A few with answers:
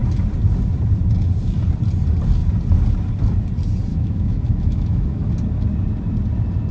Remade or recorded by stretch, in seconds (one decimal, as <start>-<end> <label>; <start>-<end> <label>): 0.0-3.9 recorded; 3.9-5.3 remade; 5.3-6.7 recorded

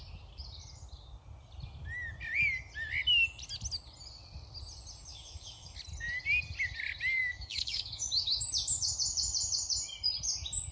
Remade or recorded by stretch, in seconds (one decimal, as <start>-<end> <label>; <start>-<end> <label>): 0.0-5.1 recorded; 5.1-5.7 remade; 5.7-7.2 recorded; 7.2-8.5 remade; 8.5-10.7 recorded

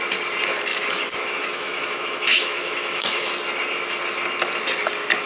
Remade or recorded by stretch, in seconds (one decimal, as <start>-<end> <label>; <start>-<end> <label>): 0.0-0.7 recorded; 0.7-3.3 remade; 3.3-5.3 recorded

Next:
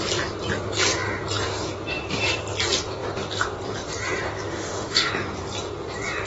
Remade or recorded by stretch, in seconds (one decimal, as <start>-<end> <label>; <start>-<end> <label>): 0.0-4.5 recorded; 4.5-5.1 remade; 5.1-6.3 recorded

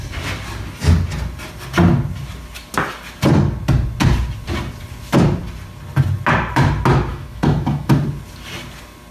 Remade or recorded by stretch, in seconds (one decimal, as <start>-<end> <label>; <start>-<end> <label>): 0.0-7.1 recorded; 7.1-7.9 remade; 7.9-9.1 recorded